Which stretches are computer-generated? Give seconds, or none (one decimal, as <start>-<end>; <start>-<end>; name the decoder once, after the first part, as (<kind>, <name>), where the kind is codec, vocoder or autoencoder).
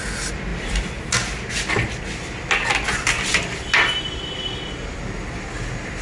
none